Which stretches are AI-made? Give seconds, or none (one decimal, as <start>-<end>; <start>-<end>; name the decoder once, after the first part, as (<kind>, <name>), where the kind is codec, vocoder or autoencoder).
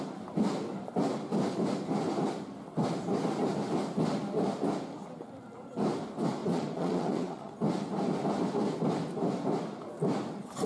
6.4-7.5 (vocoder, Vocos)